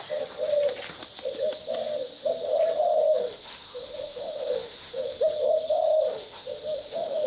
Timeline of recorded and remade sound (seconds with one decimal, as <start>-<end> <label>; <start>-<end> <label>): 0.0-3.2 recorded; 3.2-5.3 remade; 5.3-6.1 recorded; 6.1-7.3 remade